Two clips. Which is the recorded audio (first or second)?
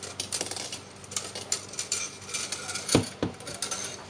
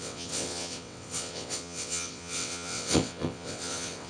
first